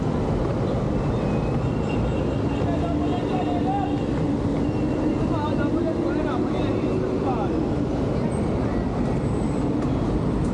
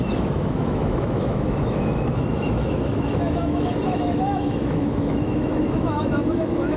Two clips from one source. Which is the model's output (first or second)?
second